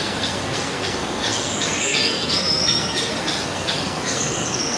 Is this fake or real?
fake